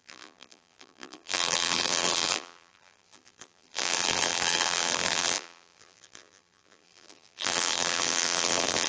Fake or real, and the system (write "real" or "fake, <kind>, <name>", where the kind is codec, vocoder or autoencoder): fake, vocoder, BigVGAN v2